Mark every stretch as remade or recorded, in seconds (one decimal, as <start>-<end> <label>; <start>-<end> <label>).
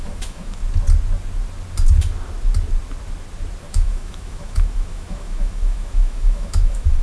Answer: 0.0-0.6 remade; 0.6-3.7 recorded; 3.7-7.0 remade